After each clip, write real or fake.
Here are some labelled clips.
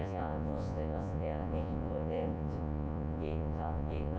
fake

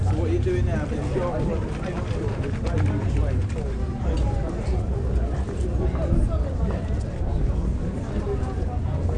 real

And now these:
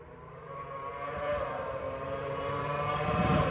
fake